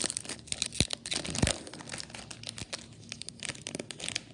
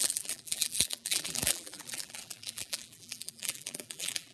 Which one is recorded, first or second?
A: first